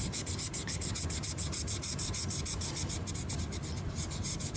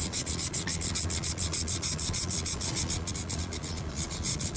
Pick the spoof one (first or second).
second